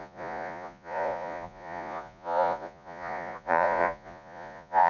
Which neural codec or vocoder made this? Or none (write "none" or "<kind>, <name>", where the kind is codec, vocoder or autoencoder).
vocoder, Vocos